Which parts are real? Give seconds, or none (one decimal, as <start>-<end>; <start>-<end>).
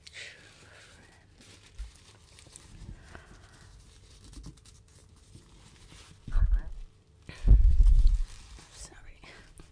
0.0-9.7